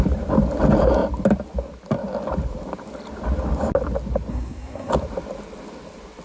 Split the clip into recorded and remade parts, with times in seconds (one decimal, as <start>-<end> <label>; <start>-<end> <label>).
0.0-4.3 recorded; 4.3-4.9 remade; 4.9-6.2 recorded

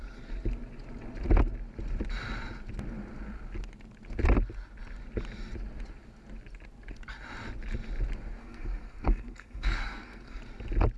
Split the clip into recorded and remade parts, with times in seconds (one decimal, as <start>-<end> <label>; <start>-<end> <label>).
0.0-8.4 recorded; 8.4-10.4 remade; 10.4-11.0 recorded

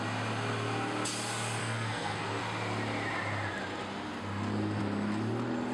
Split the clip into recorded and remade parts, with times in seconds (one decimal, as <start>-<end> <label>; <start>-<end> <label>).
0.0-1.6 recorded; 1.6-2.4 remade; 2.4-5.7 recorded

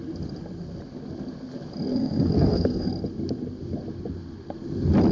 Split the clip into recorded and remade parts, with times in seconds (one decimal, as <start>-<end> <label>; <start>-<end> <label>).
0.0-1.9 recorded; 1.9-2.9 remade; 2.9-5.1 recorded

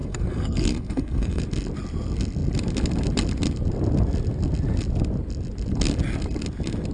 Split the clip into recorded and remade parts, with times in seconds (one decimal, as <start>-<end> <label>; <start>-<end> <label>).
0.0-1.4 remade; 1.4-6.9 recorded

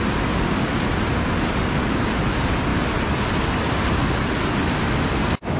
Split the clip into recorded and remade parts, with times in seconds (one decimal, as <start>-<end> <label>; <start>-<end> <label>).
0.0-5.6 recorded